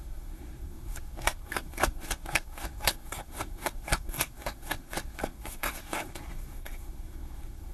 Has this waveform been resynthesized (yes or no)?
yes